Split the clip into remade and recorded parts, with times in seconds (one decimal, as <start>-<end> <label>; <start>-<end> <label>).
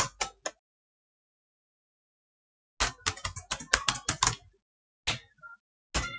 0.0-6.2 recorded